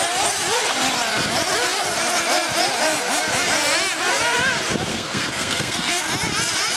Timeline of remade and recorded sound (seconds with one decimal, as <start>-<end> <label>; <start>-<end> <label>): 0.0-4.9 recorded; 4.9-6.0 remade; 6.0-6.8 recorded